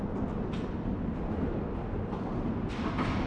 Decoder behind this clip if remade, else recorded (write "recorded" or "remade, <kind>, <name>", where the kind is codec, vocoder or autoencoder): recorded